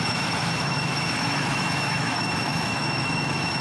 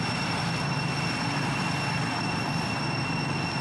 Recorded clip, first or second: second